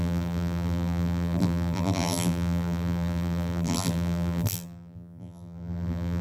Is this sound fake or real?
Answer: fake